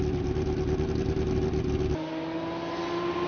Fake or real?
real